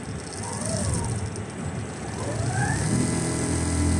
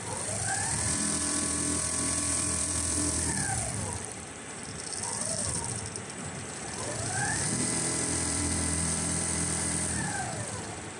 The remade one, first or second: second